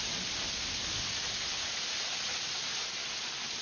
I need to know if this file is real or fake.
real